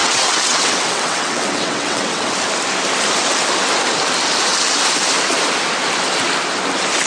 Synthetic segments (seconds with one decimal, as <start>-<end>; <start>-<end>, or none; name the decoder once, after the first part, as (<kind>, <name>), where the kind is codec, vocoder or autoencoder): 0.0-2.3 (vocoder, WaveNeXt)